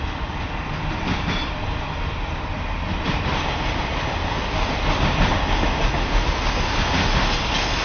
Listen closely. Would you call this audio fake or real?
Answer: real